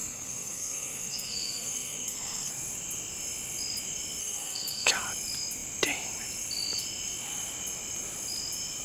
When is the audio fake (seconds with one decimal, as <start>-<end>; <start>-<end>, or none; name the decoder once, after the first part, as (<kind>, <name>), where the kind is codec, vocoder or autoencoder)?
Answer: 0.0-2.5 (codec, SNAC); 4.2-4.9